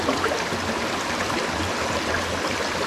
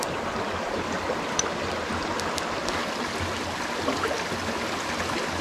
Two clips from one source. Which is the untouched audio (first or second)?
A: second